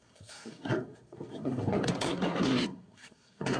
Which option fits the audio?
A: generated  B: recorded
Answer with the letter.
A